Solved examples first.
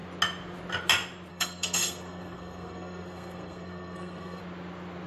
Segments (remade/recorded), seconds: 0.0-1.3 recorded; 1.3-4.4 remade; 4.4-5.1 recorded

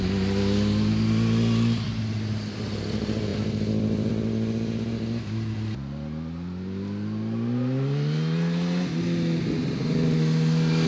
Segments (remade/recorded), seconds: 0.0-3.3 recorded; 3.3-4.1 remade; 4.1-10.9 recorded

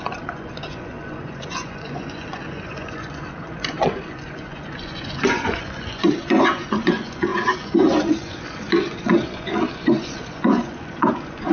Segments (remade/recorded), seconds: 0.0-11.5 remade

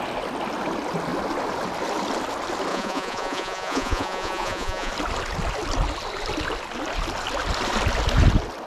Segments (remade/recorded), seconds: 0.0-2.7 recorded; 2.7-4.9 remade; 4.9-8.7 recorded

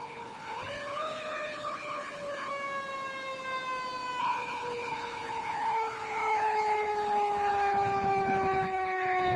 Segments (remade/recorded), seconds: 0.0-2.5 remade; 2.5-4.2 recorded; 4.2-9.4 remade

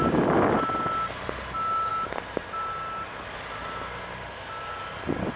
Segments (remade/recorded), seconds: 0.0-5.4 recorded

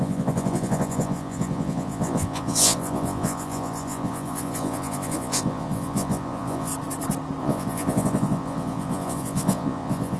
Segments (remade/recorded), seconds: 0.0-6.7 remade; 6.7-7.4 recorded; 7.4-10.2 remade